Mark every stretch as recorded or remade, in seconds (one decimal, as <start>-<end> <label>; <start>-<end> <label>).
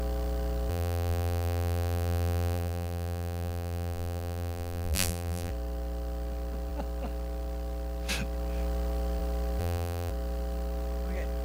0.0-0.7 recorded; 0.7-5.5 remade; 5.5-9.6 recorded; 9.6-10.1 remade; 10.1-11.4 recorded